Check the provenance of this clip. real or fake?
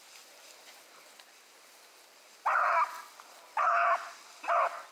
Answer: real